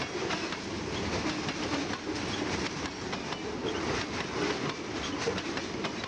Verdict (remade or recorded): recorded